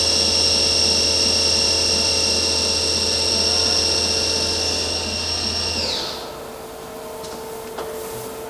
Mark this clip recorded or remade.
recorded